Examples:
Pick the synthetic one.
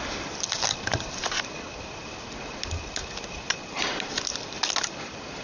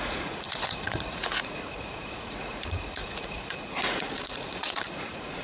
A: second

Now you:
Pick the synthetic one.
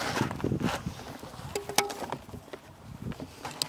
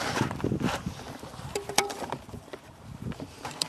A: second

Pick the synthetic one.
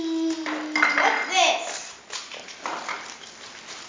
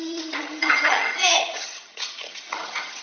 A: second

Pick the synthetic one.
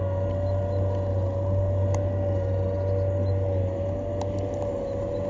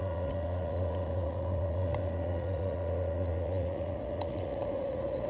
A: second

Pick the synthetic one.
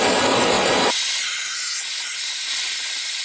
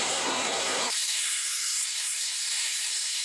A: second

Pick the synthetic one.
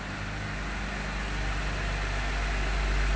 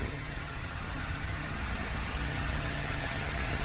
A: second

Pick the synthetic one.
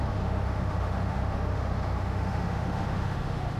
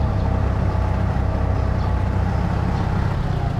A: first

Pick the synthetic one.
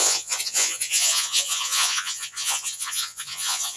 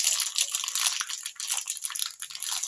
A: first